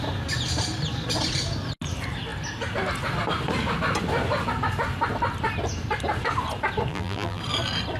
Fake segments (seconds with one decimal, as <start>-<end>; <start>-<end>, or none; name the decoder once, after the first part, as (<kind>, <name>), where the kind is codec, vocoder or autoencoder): 6.9-7.4 (vocoder, BigVGAN v2)